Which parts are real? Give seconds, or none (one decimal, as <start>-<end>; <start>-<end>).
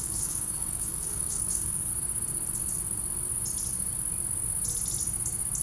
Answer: 1.9-5.6